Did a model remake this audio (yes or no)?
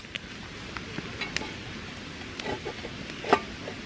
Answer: no